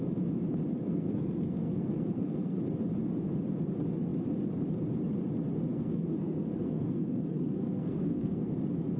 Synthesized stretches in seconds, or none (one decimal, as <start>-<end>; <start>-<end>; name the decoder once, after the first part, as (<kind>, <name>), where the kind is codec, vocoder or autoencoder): 0.8-2.6 (codec, SNAC); 5.7-8.5